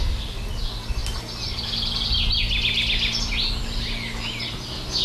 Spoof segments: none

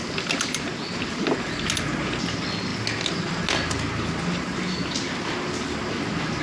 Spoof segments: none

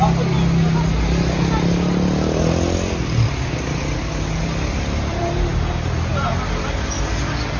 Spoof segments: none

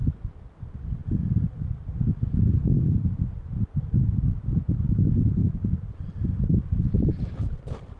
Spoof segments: 5.4-6.9

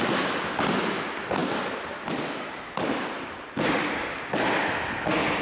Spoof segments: none

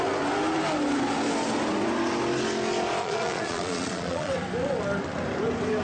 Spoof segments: 3.0-4.3

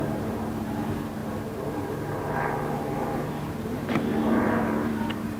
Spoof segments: 0.0-5.4

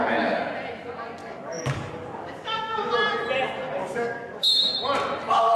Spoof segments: 1.2-2.9; 3.8-4.8